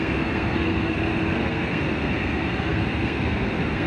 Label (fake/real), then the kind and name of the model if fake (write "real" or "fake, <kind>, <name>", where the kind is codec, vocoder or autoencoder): fake, codec, SNAC